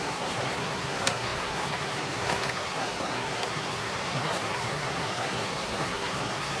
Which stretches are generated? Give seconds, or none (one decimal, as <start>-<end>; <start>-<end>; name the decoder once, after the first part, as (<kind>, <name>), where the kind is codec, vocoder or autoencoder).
0.0-6.6 (codec, SNAC)